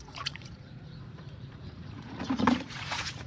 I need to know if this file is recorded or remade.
remade